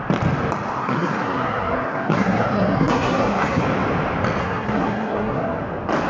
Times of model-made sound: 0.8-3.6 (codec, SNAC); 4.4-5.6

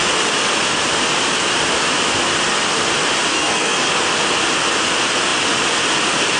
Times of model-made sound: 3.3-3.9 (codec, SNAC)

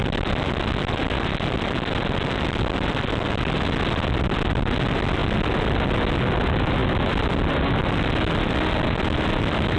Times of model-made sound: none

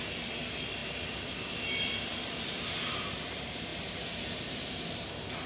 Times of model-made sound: none